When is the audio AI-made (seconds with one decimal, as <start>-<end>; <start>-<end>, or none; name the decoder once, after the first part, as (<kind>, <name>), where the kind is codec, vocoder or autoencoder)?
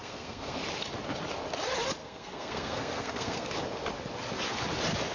0.0-0.6 (codec, SNAC); 2.0-3.5